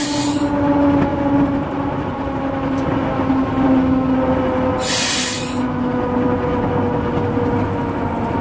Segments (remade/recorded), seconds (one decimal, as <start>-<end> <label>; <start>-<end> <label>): 0.0-8.4 recorded